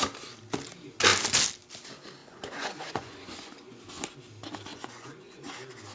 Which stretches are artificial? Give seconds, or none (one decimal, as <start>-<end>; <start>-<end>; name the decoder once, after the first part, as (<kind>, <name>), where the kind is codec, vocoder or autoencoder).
2.2-3.8 (vocoder, Vocos); 4.7-5.5